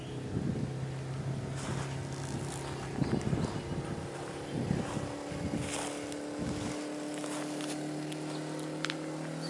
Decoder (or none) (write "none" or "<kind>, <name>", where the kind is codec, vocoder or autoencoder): none